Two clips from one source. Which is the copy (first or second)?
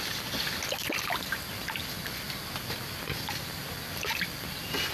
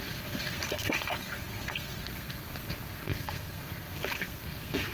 second